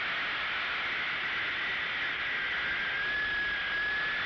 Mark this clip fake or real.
real